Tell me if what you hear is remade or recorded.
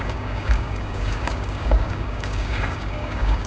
remade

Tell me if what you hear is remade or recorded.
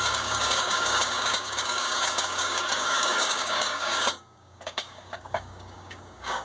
remade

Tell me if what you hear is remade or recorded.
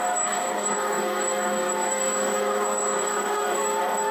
remade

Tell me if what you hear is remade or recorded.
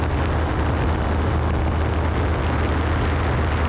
recorded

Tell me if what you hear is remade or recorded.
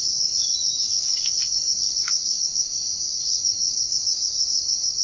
remade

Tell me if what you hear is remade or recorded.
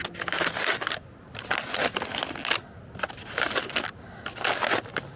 recorded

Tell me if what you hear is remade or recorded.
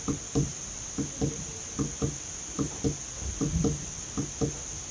recorded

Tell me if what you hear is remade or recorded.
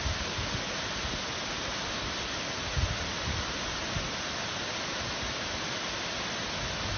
recorded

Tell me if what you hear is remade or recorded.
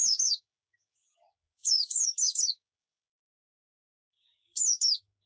remade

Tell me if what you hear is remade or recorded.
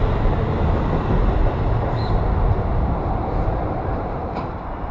recorded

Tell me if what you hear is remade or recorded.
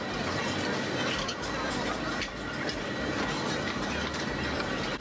recorded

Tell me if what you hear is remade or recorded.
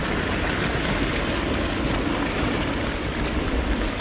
recorded